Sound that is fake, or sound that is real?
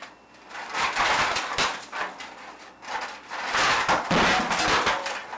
real